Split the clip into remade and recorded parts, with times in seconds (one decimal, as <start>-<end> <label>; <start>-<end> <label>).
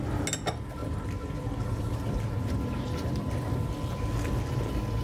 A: 0.0-0.8 recorded; 0.8-3.8 remade; 3.8-5.0 recorded